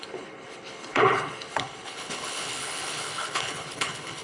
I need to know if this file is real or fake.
fake